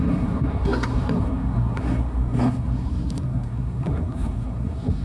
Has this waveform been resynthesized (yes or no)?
yes